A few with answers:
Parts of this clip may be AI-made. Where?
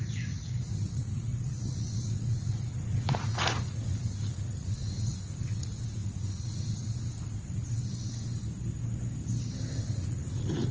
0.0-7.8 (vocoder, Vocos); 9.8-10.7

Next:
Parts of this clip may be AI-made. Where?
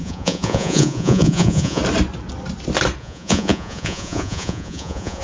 0.0-1.8 (vocoder, Vocos); 3.0-5.2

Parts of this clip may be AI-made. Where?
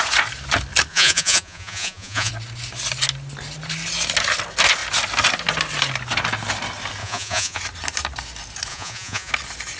0.9-2.3 (vocoder, Vocos); 7.0-7.6; 8.7-9.3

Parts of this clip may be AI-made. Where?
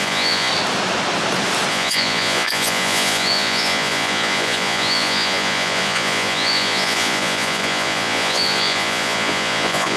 0.0-0.5 (vocoder, Vocos); 1.7-10.0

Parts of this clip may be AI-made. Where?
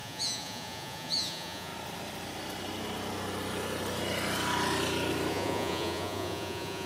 0.0-1.7 (vocoder, Vocos); 5.3-6.9